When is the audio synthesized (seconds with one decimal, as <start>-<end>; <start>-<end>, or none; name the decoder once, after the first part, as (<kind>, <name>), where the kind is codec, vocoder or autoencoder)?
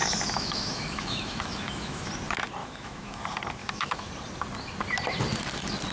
0.0-2.1 (autoencoder, DAC-VAE); 2.6-3.2; 3.6-4.1